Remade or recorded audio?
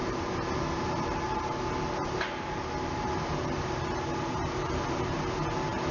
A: recorded